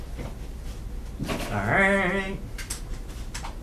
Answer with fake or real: real